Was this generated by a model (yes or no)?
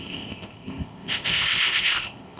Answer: yes